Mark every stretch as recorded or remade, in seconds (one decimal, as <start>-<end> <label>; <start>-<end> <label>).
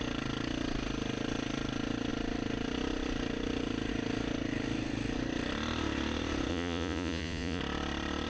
0.0-6.5 recorded; 6.5-7.6 remade; 7.6-8.3 recorded